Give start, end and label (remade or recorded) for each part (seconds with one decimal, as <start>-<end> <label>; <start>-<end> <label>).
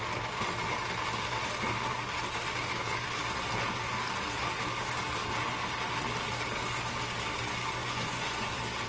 0.0-7.8 recorded; 7.8-8.5 remade; 8.5-8.9 recorded